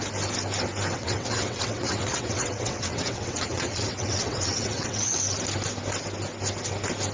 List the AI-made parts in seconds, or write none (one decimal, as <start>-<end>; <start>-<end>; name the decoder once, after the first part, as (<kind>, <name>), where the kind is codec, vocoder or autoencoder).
0.9-5.1 (vocoder, WaveNeXt)